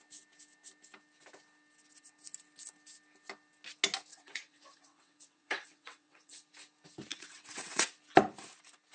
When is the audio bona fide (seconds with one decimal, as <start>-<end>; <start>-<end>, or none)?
0.0-4.1; 6.4-7.1; 7.9-8.9